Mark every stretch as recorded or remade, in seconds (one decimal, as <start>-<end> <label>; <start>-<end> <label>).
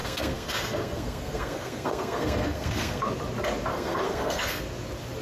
0.0-3.0 remade; 3.0-3.7 recorded; 3.7-4.6 remade; 4.6-5.2 recorded